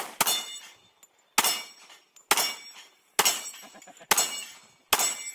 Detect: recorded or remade recorded